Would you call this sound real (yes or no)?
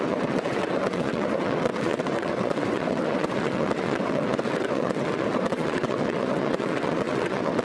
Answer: no